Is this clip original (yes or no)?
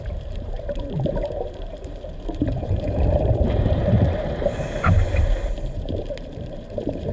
no